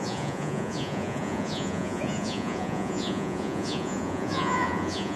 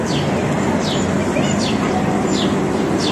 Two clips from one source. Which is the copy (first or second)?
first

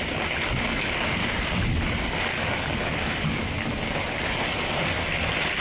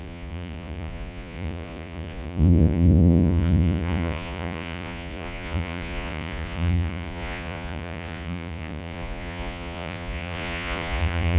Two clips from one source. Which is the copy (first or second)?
second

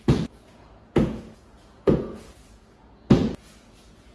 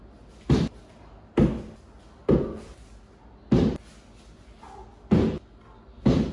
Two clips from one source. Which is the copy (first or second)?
first